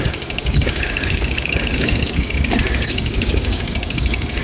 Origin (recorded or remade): remade